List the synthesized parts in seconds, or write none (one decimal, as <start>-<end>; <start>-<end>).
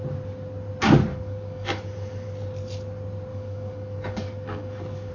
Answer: 1.1-1.8; 3.3-5.1